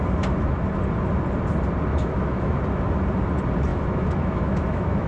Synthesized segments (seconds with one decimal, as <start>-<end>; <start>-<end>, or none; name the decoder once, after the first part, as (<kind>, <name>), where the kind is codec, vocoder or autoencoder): 1.9-2.5 (autoencoder, DAC-VAE); 3.7-5.1